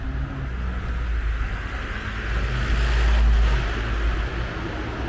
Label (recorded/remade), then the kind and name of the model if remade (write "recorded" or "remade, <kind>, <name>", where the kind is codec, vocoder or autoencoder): recorded